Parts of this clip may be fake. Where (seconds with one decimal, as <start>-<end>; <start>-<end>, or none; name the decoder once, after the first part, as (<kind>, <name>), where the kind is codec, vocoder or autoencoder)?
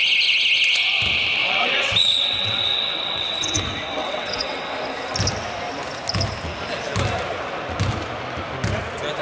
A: 1.4-3.6 (vocoder, WaveNeXt); 4.0-4.7